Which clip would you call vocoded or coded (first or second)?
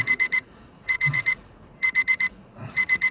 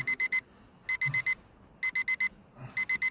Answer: first